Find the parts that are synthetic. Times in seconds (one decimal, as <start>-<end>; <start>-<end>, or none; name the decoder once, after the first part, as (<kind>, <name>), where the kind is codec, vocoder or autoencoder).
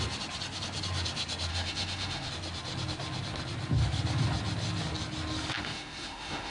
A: 1.5-2.3 (autoencoder, DAC-VAE); 5.6-6.5